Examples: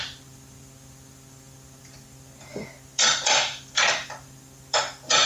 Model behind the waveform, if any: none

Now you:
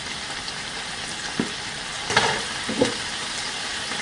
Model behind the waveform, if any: none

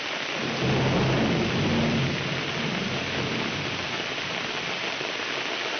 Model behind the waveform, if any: none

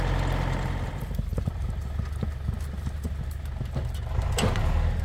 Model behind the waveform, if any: none